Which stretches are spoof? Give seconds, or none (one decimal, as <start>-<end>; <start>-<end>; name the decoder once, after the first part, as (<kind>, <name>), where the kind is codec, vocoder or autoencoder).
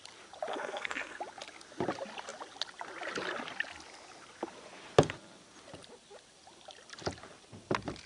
0.5-1.2 (codec, SNAC)